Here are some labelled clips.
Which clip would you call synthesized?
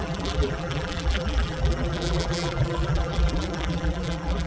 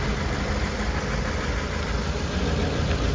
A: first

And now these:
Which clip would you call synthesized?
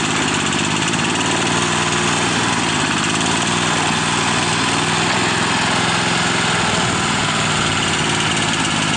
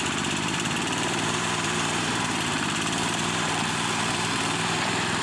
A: second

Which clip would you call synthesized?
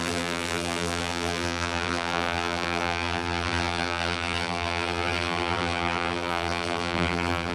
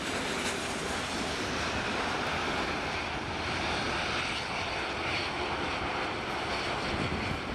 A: first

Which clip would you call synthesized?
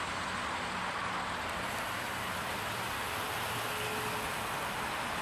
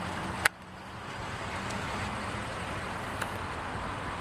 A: second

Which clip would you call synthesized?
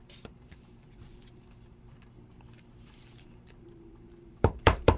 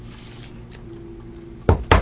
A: first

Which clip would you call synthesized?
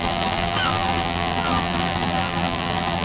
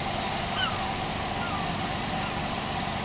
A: first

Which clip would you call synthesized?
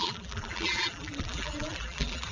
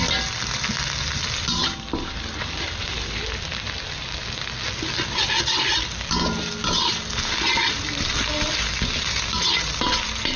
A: first